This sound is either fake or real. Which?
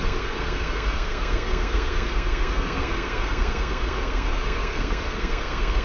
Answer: fake